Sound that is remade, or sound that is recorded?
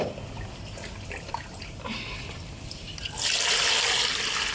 recorded